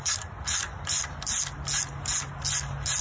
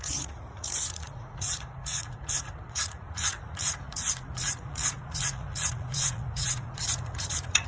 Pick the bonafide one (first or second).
first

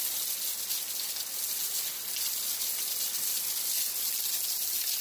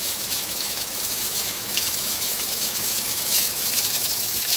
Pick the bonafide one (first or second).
first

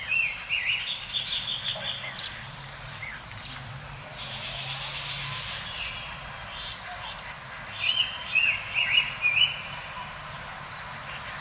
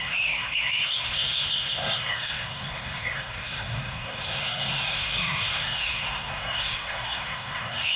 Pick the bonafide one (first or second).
first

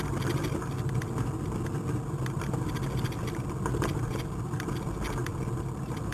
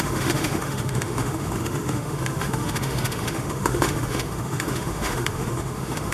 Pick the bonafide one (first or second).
first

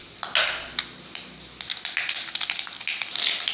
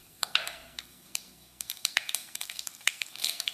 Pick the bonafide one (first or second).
first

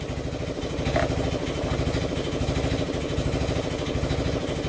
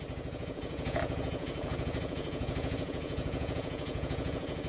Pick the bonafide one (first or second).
first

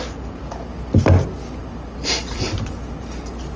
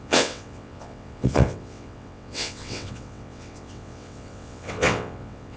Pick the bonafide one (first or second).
first